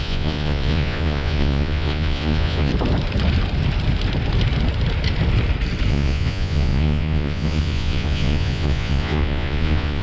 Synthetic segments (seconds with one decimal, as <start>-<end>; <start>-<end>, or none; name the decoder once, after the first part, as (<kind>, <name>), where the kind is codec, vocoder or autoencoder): 0.0-2.7 (vocoder, Vocos); 5.9-10.0